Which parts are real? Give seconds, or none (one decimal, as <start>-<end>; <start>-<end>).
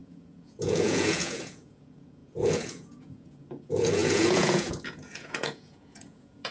none